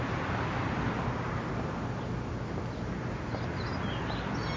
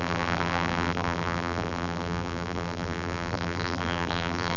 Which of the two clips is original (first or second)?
first